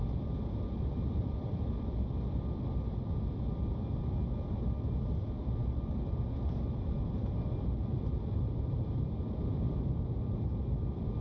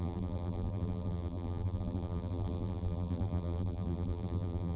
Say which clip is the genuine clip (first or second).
first